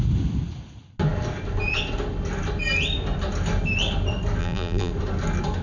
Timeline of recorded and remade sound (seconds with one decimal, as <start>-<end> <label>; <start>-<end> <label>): 0.0-4.4 recorded; 4.4-4.9 remade; 4.9-5.6 recorded